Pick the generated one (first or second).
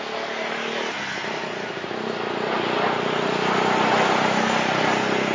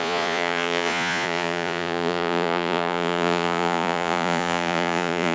second